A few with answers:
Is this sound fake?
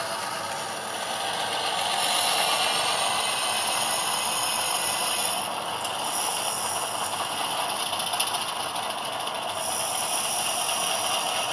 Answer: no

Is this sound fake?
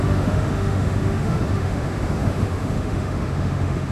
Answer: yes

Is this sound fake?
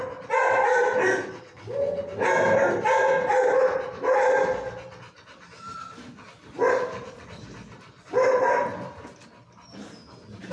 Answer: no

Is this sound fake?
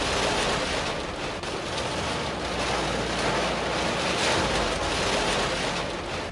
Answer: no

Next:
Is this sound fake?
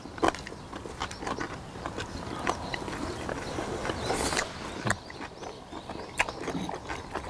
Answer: no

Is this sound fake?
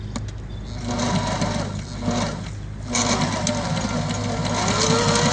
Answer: no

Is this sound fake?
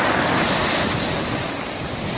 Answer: no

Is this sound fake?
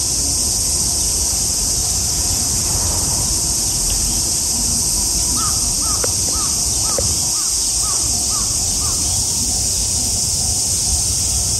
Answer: yes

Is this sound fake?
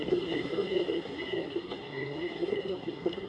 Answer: yes